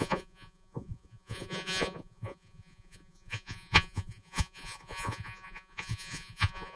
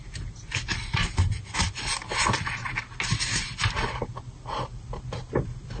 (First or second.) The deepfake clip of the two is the first